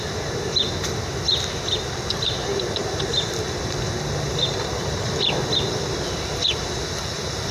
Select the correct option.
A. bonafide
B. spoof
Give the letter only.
A